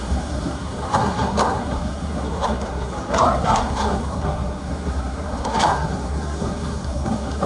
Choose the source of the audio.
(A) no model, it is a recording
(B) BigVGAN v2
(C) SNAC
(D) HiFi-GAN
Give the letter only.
C